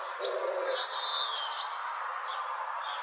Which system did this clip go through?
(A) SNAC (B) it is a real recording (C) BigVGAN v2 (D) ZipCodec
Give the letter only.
B